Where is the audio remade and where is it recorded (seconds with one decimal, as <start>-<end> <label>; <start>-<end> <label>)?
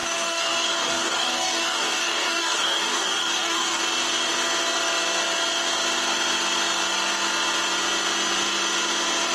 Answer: 0.0-3.8 remade; 3.8-9.3 recorded